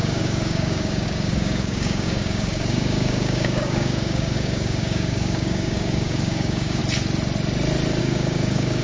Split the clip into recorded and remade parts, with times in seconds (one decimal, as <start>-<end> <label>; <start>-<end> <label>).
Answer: 0.0-6.8 remade; 6.8-8.0 recorded; 8.0-8.8 remade